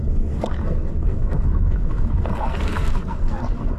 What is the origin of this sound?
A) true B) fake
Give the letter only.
B